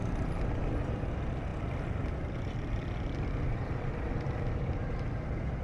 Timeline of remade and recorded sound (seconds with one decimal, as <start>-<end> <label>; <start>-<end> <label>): 0.0-5.6 recorded